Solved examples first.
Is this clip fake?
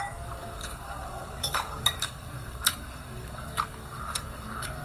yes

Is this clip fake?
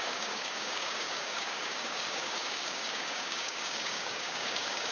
yes